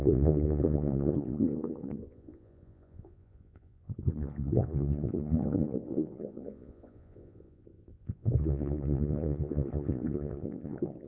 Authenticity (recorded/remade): remade